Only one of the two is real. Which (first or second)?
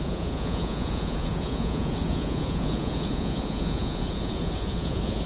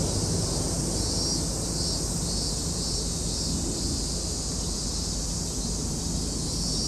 second